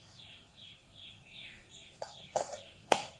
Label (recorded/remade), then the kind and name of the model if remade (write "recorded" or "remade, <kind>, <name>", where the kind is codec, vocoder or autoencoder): remade, codec, SNAC